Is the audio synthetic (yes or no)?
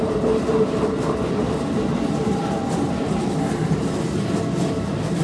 no